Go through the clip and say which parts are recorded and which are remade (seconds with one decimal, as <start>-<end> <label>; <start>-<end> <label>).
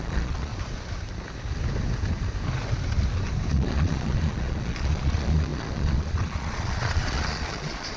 0.0-0.5 remade; 0.5-3.5 recorded; 3.5-8.0 remade